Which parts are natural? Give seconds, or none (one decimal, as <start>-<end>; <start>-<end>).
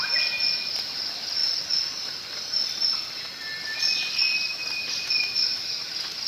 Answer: 0.0-5.5